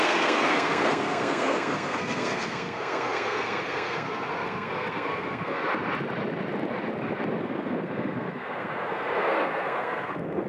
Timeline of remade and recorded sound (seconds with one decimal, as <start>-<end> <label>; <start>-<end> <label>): 0.0-5.6 remade; 5.6-7.4 recorded; 7.4-10.5 remade